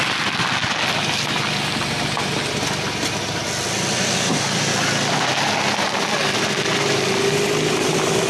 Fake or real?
real